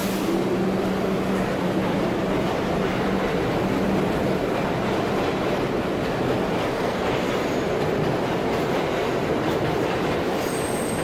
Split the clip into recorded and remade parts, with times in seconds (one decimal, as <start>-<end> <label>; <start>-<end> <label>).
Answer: 0.0-6.6 recorded; 6.6-7.3 remade; 7.3-11.0 recorded